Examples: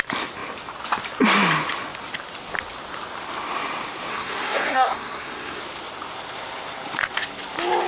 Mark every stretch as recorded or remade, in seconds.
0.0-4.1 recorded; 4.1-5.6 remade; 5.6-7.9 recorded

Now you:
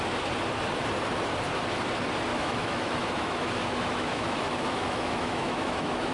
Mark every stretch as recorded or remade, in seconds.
0.0-2.3 recorded; 2.3-6.1 remade

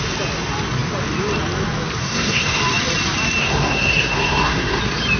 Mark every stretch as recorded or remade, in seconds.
0.0-2.0 recorded; 2.0-2.6 remade; 2.6-3.4 recorded; 3.4-4.8 remade; 4.8-5.2 recorded

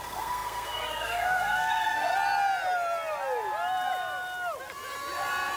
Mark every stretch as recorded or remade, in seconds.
0.0-2.1 remade; 2.1-5.6 recorded

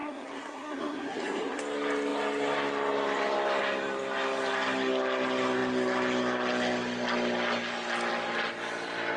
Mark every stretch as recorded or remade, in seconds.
0.0-1.6 remade; 1.6-9.2 recorded

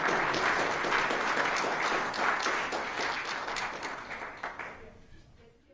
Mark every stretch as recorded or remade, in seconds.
0.0-5.7 recorded

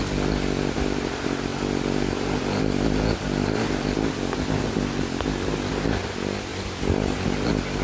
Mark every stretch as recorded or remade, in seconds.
0.0-7.8 recorded